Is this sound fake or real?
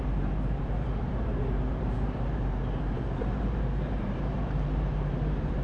fake